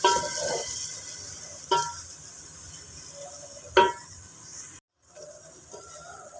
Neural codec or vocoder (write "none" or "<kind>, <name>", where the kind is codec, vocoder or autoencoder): none